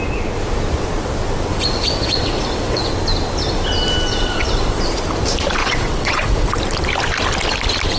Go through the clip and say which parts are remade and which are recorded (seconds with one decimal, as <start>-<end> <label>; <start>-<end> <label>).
0.0-1.5 recorded; 1.5-2.9 remade; 2.9-4.1 recorded; 4.1-4.9 remade; 4.9-5.6 recorded; 5.6-6.5 remade; 6.5-8.0 recorded